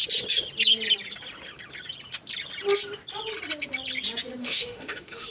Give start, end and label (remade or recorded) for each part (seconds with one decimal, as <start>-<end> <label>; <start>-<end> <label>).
0.0-4.4 recorded; 4.4-5.3 remade